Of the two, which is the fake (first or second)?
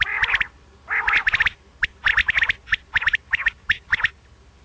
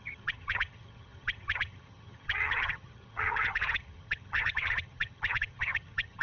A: second